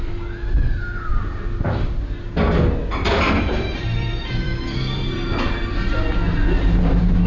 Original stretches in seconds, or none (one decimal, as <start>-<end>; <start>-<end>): 0.0-2.8; 6.1-7.3